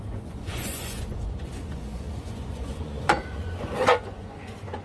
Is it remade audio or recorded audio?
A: remade